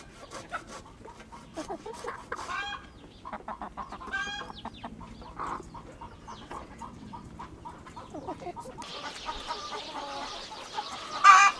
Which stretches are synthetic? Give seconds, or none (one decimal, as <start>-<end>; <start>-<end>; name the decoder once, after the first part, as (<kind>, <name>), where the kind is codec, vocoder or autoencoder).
1.5-2.2 (vocoder, WaveNeXt); 6.3-7.3